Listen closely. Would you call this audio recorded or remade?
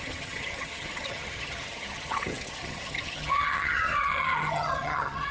remade